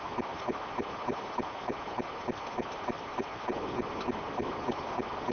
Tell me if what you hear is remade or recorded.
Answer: recorded